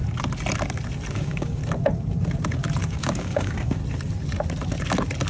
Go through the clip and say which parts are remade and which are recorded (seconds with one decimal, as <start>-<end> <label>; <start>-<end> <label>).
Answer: 0.0-1.1 recorded; 1.1-1.6 remade; 1.6-2.8 recorded; 2.8-3.8 remade; 3.8-5.3 recorded